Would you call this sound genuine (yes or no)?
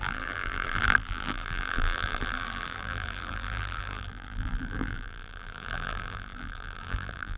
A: no